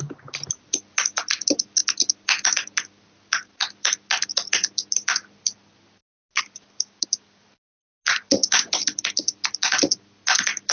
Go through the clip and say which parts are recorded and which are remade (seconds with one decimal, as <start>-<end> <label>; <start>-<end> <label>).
0.0-10.7 recorded